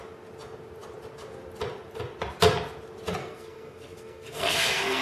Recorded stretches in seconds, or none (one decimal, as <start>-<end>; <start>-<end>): 0.0-3.2